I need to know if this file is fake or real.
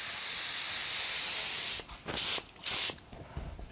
real